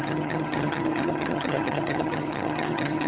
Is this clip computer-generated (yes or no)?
yes